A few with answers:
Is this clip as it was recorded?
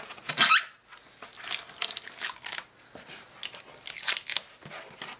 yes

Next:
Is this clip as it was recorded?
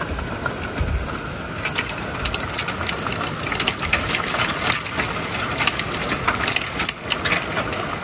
yes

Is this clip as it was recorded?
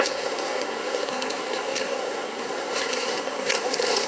no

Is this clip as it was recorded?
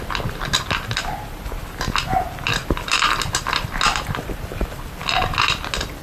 yes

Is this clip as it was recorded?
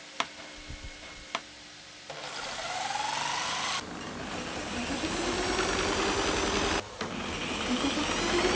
yes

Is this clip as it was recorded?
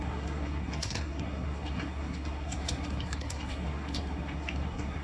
no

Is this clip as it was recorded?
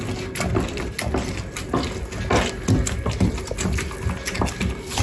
yes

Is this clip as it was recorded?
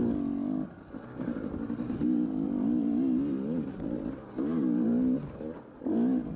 yes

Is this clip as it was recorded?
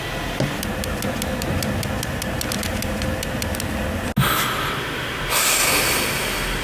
yes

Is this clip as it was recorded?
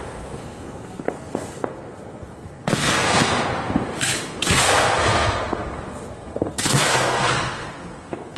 no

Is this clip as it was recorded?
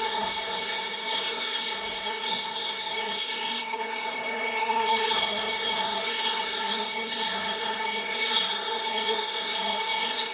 no